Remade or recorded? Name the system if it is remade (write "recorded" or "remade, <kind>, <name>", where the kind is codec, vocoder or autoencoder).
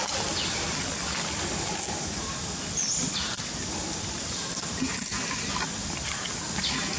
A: recorded